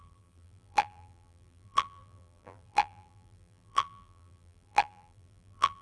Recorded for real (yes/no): no